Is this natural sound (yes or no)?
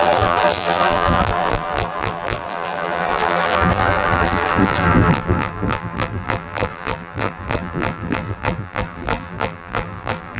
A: no